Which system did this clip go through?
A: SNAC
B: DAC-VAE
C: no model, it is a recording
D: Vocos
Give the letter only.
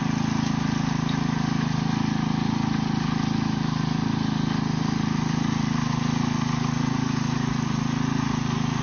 C